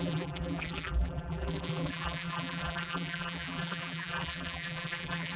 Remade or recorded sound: remade